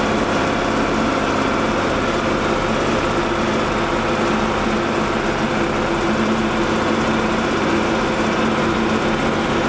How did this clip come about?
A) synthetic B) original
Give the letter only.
B